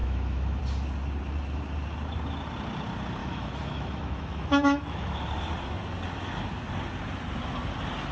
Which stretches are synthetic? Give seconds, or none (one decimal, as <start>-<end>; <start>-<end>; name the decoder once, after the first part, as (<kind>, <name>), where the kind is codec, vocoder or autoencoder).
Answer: 0.0-0.6 (autoencoder, DAC-VAE); 3.2-5.2